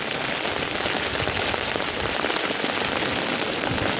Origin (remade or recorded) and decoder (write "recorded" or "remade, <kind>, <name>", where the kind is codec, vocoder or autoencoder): recorded